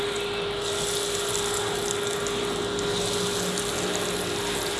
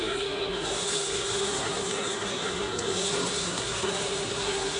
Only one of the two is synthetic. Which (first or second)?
second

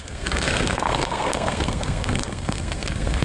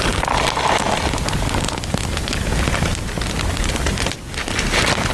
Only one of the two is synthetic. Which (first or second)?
first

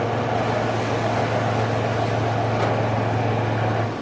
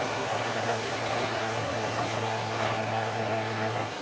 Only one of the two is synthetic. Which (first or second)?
second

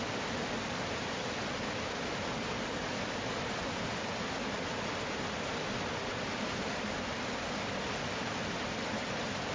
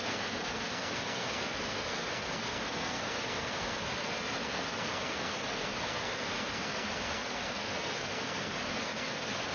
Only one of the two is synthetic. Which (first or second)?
second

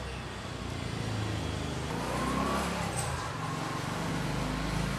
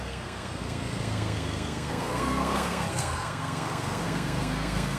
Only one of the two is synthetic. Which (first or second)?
second